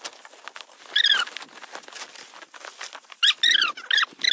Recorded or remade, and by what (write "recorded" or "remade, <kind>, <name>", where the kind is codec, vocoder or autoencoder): recorded